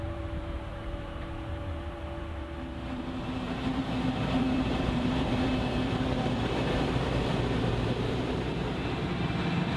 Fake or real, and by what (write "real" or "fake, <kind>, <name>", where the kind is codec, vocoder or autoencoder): fake, vocoder, BigVGAN v2